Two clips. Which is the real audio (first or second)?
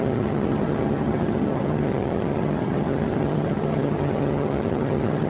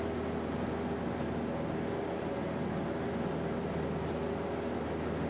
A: second